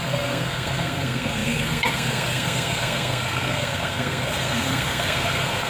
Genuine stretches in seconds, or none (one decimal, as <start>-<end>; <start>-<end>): none